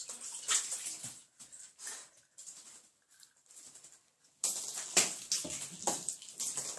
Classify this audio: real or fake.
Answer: real